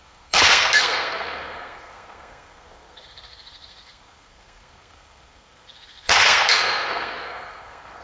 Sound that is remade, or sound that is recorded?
remade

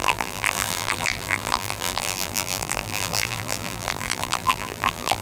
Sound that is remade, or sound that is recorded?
remade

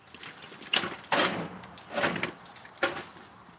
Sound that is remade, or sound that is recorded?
remade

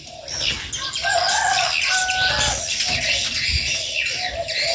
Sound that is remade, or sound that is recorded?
recorded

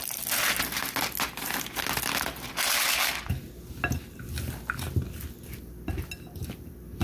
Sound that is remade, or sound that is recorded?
recorded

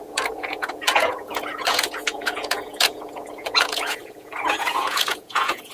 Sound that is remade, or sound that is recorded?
remade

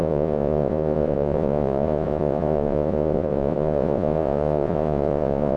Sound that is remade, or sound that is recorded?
remade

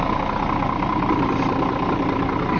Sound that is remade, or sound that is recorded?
recorded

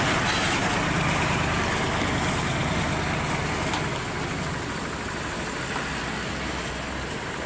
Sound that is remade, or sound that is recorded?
recorded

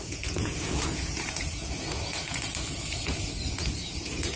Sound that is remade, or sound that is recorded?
remade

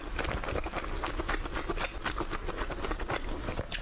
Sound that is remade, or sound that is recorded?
recorded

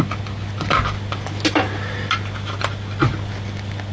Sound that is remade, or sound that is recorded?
recorded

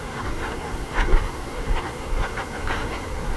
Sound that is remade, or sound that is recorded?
remade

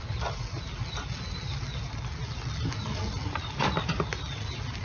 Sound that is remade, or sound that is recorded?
recorded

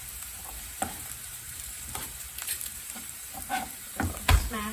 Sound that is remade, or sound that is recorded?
remade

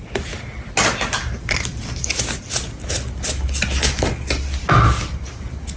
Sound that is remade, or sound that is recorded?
recorded